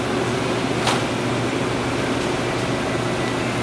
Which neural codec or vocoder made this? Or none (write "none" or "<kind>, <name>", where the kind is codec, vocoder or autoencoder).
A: none